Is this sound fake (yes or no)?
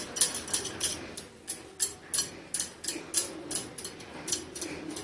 no